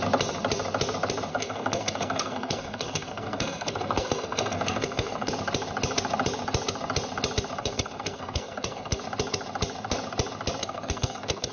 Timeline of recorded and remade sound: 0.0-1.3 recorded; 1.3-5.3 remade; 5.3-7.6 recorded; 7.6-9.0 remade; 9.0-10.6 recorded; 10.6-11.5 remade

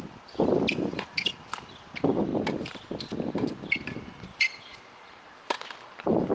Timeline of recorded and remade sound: 0.0-6.3 recorded

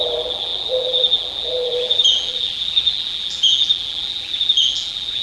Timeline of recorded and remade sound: 0.0-5.2 remade

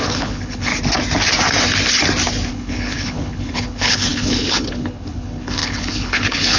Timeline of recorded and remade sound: 0.0-0.7 remade; 0.7-2.5 recorded; 2.5-6.6 remade

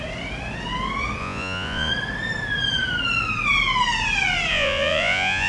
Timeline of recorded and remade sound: 0.0-1.2 recorded; 1.2-1.9 remade; 1.9-4.5 recorded; 4.5-5.5 remade

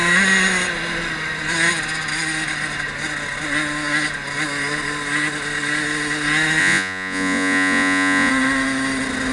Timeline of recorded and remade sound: 0.0-6.6 recorded; 6.6-8.3 remade; 8.3-9.3 recorded

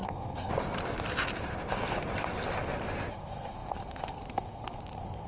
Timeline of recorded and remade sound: 0.0-0.5 remade; 0.5-3.1 recorded; 3.1-5.3 remade

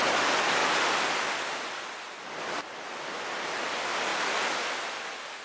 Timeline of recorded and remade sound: 0.0-5.4 recorded